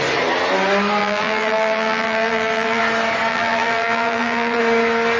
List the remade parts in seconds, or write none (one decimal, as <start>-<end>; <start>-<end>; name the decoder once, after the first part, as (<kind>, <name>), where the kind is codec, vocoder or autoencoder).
1.0-2.8 (vocoder, BigVGAN v2); 3.3-4.6